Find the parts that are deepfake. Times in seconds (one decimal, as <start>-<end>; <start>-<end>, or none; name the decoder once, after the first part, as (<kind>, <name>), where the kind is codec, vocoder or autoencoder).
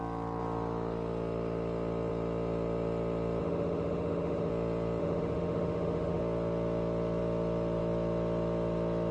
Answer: 3.4-4.5 (autoencoder, DAC-VAE); 5.0-6.2